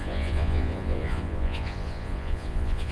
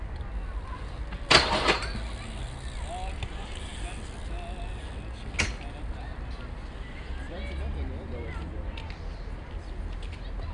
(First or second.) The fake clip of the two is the first